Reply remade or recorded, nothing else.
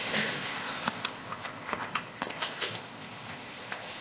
remade